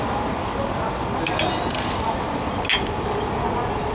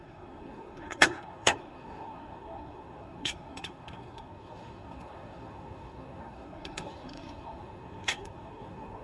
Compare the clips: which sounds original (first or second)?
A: first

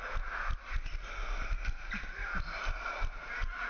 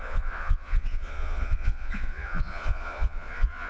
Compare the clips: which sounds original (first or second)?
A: first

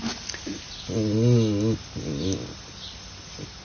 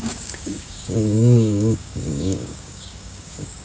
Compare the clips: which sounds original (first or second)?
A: first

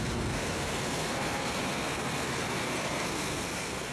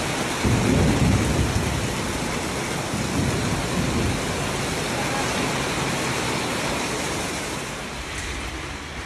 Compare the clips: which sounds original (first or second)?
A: second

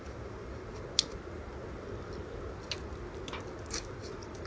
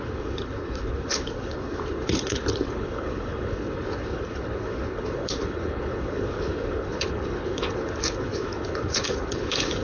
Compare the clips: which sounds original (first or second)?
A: first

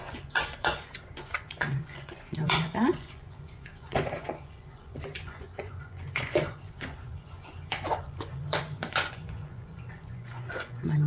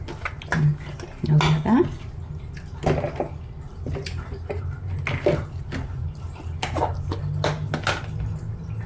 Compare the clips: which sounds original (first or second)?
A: second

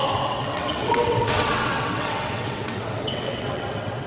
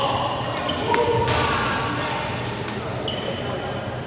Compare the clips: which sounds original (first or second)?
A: second